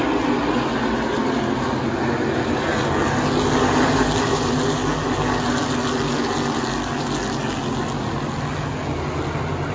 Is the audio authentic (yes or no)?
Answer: yes